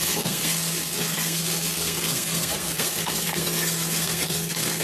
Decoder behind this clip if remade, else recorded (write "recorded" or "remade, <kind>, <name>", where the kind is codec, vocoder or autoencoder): remade, codec, SNAC